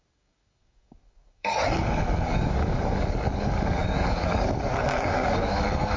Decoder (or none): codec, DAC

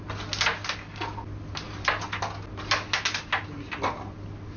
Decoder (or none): none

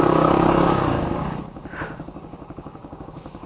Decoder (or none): codec, DAC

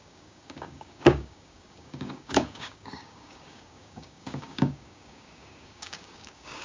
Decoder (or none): codec, DAC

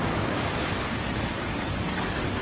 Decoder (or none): codec, DAC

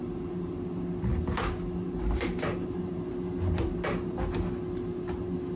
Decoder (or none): none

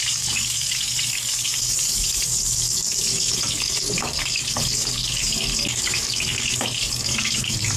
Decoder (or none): codec, DAC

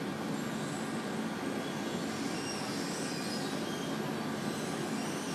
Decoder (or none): none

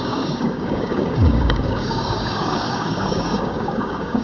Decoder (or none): codec, DAC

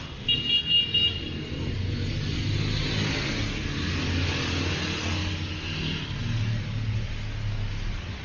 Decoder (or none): none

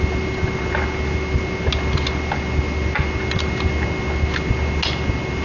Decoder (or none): none